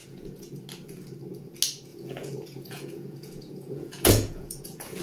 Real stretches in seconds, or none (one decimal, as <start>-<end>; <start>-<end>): 0.6-1.9